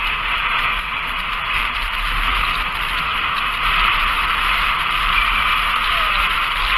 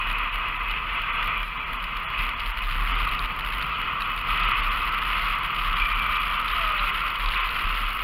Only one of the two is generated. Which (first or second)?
first